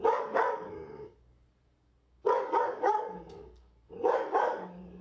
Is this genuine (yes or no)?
no